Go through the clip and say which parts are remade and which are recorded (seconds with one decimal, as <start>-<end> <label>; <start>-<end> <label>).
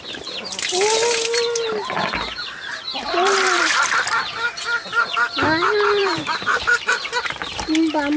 0.0-3.0 recorded; 3.0-3.6 remade; 3.6-6.0 recorded; 6.0-6.8 remade; 6.8-8.2 recorded